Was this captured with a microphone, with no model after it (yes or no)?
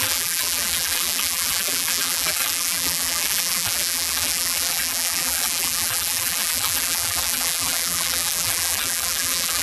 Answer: no